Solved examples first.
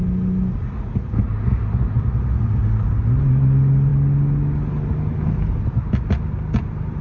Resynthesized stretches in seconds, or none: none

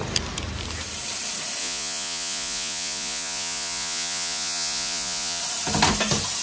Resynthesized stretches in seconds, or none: 1.6-5.4 (vocoder, Vocos)

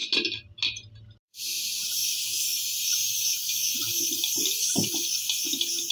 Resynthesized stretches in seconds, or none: 1.2-3.6 (vocoder, BigVGAN v2)

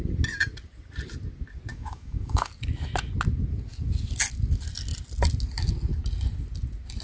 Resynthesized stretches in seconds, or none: 1.7-2.5 (autoencoder, DAC-VAE)

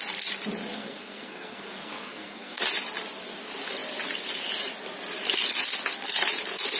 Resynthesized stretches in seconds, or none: 0.7-2.6 (codec, SNAC)

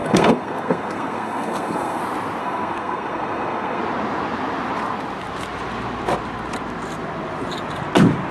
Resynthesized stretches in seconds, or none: 0.0-2.0 (codec, SNAC); 2.4-3.8

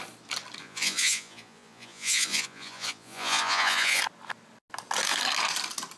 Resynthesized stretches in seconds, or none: 0.6-4.0 (vocoder, Vocos)